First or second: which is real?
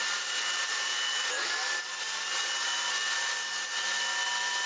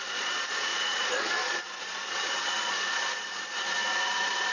first